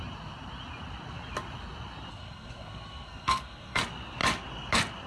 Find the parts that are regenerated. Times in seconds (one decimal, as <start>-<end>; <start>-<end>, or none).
2.1-3.8